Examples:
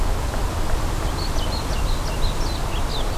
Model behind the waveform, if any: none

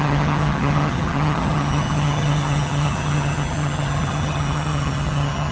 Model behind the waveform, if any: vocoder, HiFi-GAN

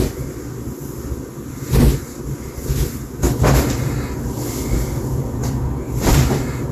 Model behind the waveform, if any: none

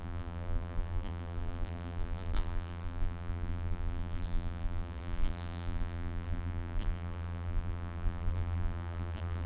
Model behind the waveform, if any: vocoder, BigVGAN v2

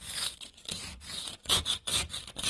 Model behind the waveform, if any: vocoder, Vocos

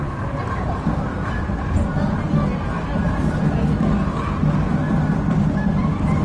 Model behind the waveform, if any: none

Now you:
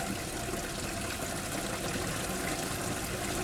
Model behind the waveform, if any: none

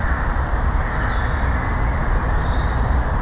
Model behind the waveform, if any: none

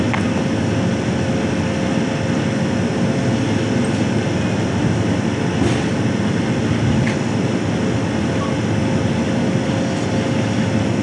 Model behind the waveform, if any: none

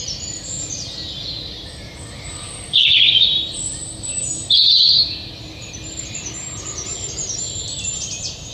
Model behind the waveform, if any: vocoder, BigVGAN v2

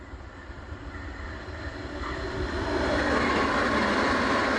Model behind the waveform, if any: none